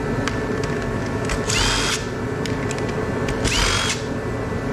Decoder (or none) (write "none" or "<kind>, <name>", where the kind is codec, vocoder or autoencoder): none